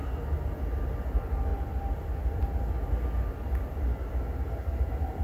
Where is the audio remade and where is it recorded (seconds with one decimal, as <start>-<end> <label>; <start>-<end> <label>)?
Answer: 0.0-1.5 recorded; 1.5-2.4 remade; 2.4-3.4 recorded; 3.4-4.1 remade; 4.1-5.2 recorded